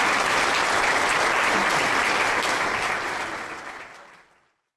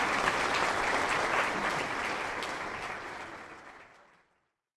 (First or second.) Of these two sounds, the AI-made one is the second